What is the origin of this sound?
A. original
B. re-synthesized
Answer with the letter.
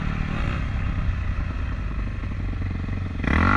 A